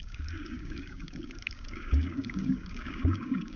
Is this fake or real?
fake